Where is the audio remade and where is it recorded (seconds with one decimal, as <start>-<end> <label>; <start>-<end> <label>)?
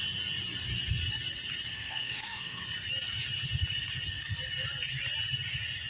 0.0-1.7 recorded; 1.7-2.6 remade; 2.6-5.9 recorded